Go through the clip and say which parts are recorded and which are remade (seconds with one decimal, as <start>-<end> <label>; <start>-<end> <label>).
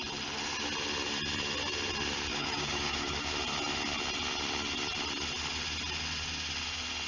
0.0-2.3 recorded; 2.3-3.3 remade; 3.3-7.1 recorded